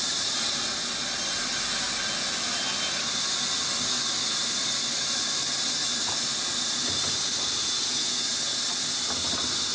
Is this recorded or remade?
recorded